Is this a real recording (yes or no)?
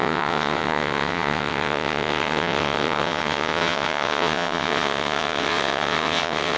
no